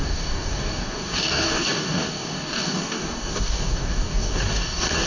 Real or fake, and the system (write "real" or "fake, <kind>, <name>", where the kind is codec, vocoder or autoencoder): fake, codec, DAC